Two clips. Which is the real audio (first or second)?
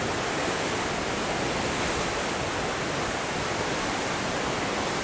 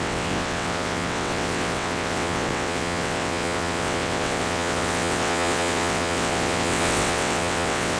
first